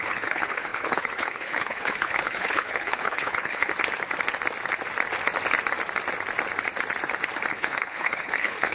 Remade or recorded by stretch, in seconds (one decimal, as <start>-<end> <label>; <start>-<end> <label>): 0.0-3.7 remade; 3.7-7.5 recorded; 7.5-8.7 remade